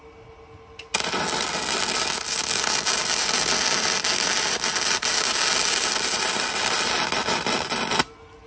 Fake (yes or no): no